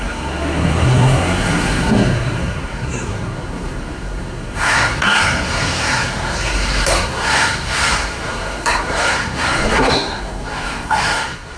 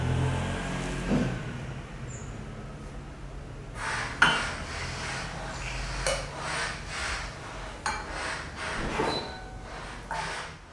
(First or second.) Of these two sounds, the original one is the second